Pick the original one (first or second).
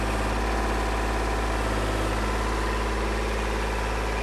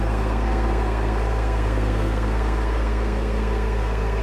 first